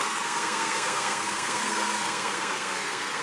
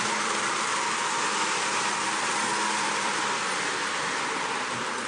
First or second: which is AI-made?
first